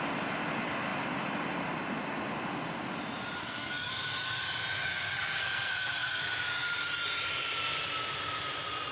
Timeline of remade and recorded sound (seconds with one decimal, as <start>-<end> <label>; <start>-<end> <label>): 0.0-3.4 recorded; 3.4-3.9 remade; 3.9-4.9 recorded; 4.9-6.2 remade; 6.2-8.9 recorded